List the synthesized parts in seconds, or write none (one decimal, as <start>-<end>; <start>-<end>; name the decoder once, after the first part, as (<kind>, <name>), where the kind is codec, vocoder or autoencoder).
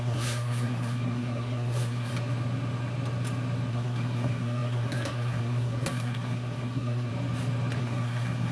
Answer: 0.0-2.1 (codec, SNAC); 3.7-7.1; 7.8-8.5